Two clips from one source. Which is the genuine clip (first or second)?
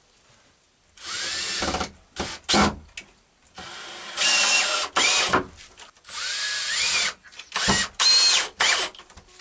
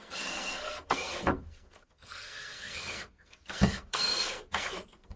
first